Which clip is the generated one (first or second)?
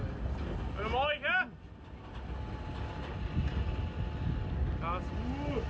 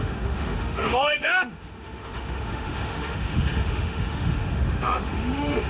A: second